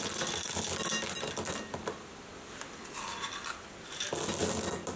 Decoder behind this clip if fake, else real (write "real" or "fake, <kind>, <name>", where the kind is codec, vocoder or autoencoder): real